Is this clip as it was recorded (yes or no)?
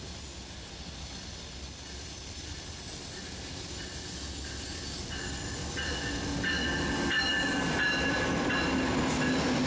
yes